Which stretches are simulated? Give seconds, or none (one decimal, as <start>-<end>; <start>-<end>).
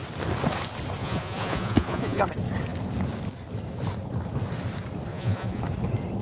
1.0-2.2; 5.1-5.6